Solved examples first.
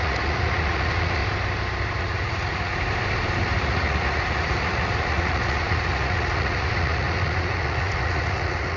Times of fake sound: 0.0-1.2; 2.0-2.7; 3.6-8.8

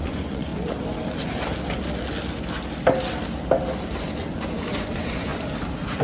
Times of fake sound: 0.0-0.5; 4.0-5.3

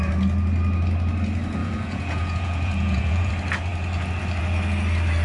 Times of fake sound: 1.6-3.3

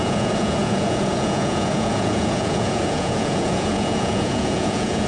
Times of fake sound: 0.0-5.1

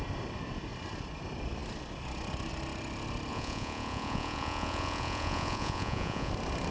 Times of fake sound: 3.3-6.3

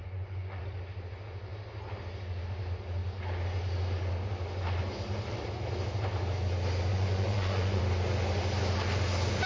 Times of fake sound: 0.0-0.6; 6.9-7.8

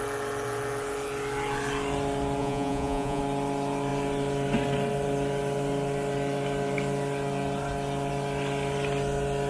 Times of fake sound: 2.4-3.2